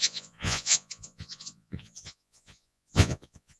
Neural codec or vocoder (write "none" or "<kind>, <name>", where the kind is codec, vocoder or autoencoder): vocoder, Vocos